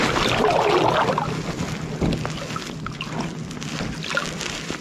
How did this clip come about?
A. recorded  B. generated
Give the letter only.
A